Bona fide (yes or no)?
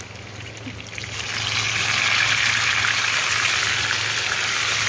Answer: yes